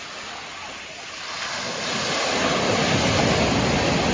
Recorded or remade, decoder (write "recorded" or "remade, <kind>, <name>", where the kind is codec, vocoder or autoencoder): recorded